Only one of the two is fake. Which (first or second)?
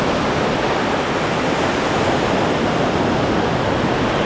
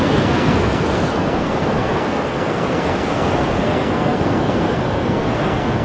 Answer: second